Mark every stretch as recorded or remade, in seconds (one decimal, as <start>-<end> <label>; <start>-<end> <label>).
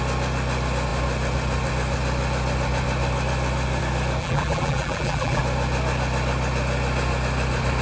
0.0-4.2 recorded; 4.2-5.4 remade; 5.4-7.8 recorded